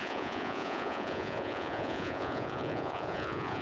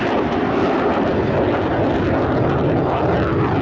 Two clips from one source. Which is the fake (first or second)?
first